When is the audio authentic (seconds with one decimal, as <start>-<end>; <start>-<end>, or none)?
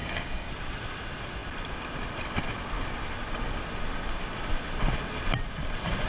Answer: 0.5-6.1